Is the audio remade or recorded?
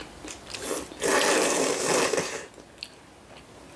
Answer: recorded